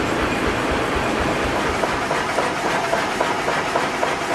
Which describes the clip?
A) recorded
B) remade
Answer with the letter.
A